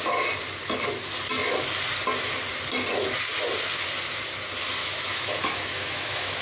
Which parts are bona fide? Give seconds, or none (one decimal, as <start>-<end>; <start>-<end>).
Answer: 0.0-4.8